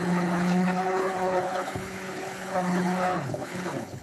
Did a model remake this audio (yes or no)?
yes